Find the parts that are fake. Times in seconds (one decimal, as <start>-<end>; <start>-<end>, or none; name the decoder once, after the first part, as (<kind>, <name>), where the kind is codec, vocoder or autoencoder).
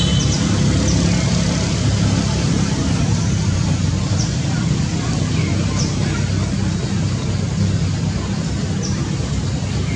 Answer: none